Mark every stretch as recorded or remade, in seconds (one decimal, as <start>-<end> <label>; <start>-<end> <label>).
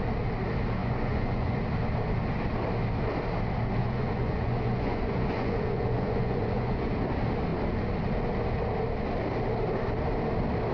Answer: 0.0-0.8 recorded; 0.8-1.6 remade; 1.6-3.8 recorded; 3.8-6.9 remade; 6.9-10.7 recorded